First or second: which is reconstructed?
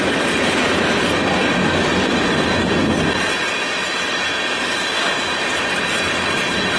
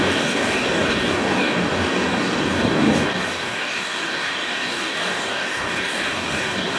second